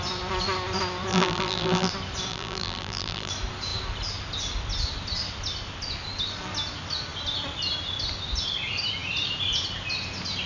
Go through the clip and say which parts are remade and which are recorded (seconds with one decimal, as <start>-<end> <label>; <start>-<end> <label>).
0.0-1.1 recorded; 1.1-1.9 remade; 1.9-2.3 recorded; 2.3-3.3 remade; 3.3-10.5 recorded